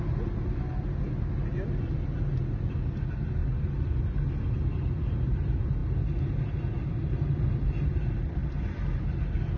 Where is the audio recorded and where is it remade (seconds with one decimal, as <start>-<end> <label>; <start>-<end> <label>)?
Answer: 0.0-3.4 recorded; 3.4-4.0 remade; 4.0-9.6 recorded

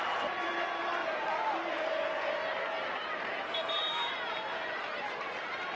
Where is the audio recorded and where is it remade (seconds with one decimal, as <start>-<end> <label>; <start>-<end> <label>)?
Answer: 0.0-1.0 recorded; 1.0-3.9 remade; 3.9-4.5 recorded; 4.5-5.8 remade

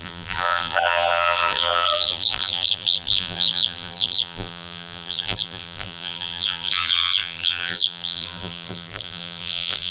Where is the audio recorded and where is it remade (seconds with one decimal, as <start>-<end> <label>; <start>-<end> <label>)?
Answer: 0.0-9.9 remade

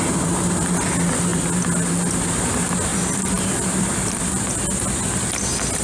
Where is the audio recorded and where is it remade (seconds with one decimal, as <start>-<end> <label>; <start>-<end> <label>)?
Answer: 0.0-2.9 recorded; 2.9-4.5 remade; 4.5-5.8 recorded

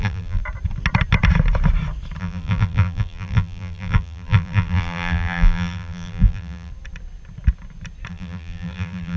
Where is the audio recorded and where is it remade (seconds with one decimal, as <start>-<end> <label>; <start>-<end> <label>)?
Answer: 0.0-0.4 remade; 0.4-2.2 recorded; 2.2-6.7 remade; 6.7-8.1 recorded; 8.1-9.2 remade

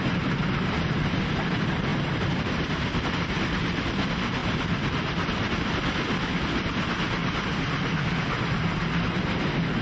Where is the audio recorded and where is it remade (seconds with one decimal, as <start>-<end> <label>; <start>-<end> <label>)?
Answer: 0.0-1.9 recorded; 1.9-3.3 remade; 3.3-7.2 recorded; 7.2-8.0 remade; 8.0-9.8 recorded

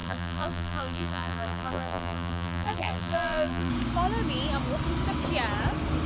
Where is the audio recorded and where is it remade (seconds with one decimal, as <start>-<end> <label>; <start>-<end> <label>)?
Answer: 0.0-3.7 remade; 3.7-6.1 recorded

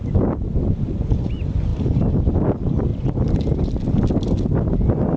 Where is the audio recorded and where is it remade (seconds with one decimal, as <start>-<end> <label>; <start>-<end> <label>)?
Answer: 0.0-5.2 recorded